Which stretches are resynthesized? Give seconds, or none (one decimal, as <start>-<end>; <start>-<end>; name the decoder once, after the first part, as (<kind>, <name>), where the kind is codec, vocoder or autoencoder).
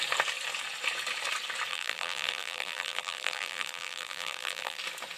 1.7-4.8 (vocoder, BigVGAN v2)